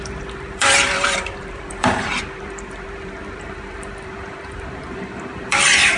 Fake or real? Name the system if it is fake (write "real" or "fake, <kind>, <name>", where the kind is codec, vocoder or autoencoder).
fake, vocoder, BigVGAN v2